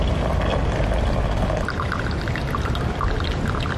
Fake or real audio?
real